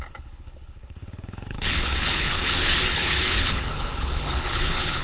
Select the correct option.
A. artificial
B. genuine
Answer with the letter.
A